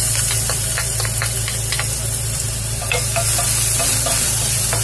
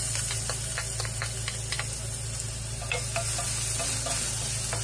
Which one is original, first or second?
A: second